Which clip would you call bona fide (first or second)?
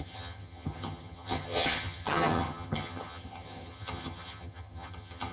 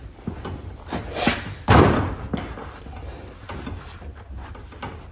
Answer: second